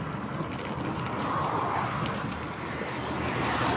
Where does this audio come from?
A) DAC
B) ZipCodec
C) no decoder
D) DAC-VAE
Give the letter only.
C